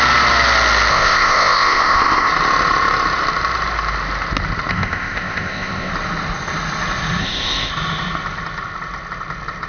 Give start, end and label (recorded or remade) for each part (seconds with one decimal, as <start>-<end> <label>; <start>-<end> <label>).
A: 0.0-0.9 recorded; 0.9-2.3 remade; 2.3-4.7 recorded; 4.7-5.9 remade; 5.9-7.2 recorded; 7.2-7.7 remade; 7.7-9.7 recorded